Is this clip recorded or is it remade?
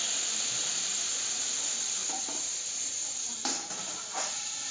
remade